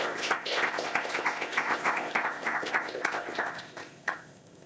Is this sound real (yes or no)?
no